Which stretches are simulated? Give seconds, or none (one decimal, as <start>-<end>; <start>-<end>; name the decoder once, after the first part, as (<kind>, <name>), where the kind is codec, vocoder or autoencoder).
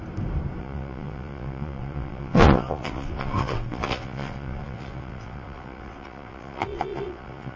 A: 0.6-7.6 (vocoder, WaveNeXt)